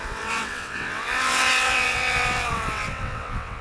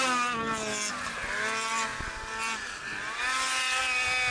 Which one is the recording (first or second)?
second